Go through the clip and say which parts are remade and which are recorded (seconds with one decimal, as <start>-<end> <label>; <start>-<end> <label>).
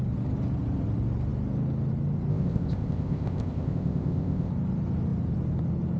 0.0-2.3 recorded; 2.3-4.5 remade; 4.5-6.0 recorded